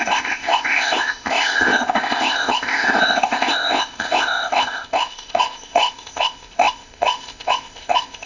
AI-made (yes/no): yes